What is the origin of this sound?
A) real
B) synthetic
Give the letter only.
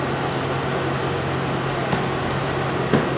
A